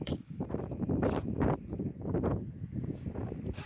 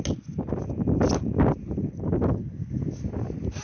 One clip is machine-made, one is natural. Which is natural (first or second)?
second